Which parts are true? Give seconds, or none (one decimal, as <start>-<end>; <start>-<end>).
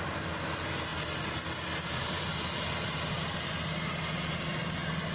0.0-5.1